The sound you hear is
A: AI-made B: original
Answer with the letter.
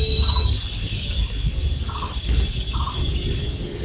A